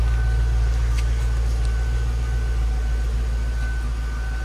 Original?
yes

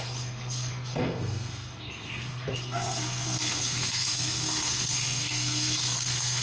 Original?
no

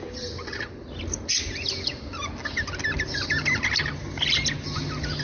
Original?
yes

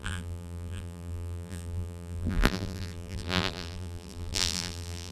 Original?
no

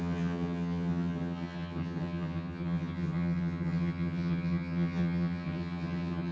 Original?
no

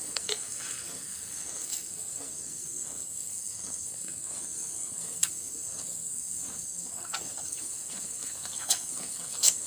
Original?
no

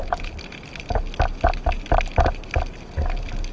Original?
yes